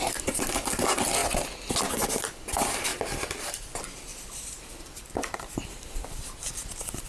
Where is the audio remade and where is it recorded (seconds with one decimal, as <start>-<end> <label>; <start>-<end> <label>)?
0.0-4.1 recorded; 4.1-7.1 remade